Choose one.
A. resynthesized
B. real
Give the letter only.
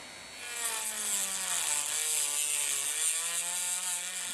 B